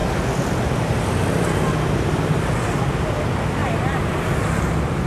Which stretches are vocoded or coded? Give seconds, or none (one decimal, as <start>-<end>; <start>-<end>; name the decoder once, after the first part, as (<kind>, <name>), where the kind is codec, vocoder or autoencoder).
3.6-4.2 (vocoder, BigVGAN v2)